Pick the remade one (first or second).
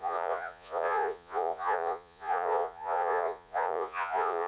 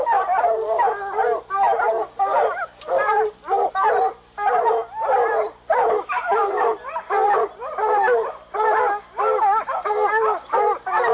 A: first